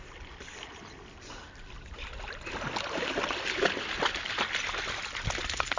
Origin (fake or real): real